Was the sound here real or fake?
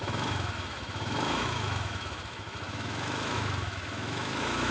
fake